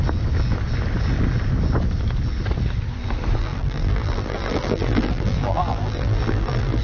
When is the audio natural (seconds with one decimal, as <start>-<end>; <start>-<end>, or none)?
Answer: 0.0-3.4